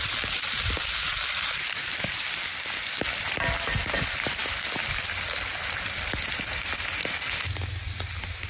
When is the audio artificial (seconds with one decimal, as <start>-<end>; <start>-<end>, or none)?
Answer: none